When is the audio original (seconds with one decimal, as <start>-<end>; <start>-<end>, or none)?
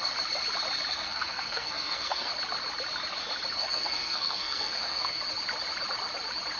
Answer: 0.0-0.9; 2.3-3.6; 5.2-6.6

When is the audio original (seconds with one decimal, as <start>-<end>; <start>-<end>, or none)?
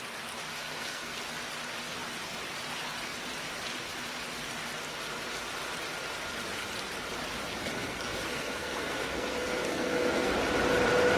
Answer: 0.0-0.5; 1.2-7.6; 10.3-11.2